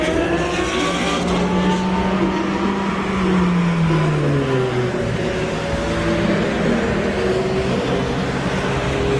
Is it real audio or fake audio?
real